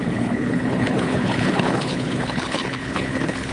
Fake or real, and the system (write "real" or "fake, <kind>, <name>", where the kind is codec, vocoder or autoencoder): fake, codec, HILCodec